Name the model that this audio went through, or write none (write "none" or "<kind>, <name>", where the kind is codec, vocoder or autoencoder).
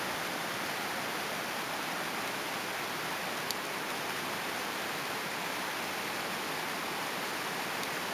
none